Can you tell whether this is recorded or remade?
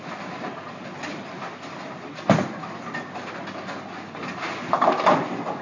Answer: recorded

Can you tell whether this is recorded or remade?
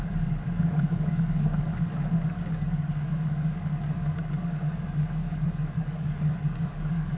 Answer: remade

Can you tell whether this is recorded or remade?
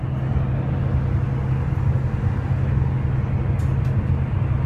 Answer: recorded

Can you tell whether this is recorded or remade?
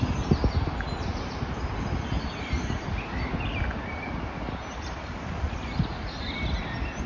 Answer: recorded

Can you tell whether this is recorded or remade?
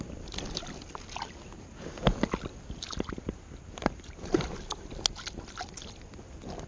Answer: recorded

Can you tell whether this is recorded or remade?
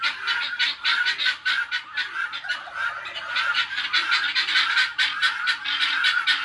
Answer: recorded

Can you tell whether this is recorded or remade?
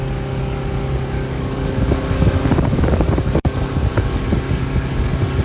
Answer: remade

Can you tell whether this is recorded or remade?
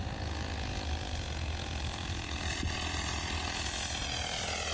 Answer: recorded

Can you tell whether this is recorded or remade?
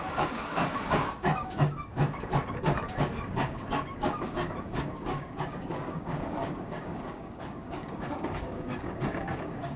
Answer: remade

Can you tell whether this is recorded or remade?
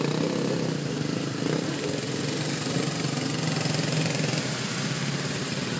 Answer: recorded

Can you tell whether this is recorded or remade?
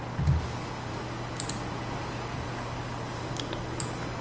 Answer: recorded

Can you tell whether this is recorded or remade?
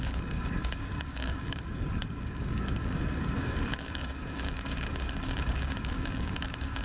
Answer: remade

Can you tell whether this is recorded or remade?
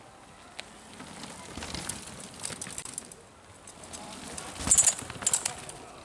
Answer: recorded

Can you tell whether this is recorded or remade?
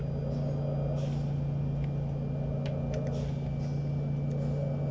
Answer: recorded